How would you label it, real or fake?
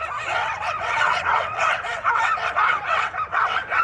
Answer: fake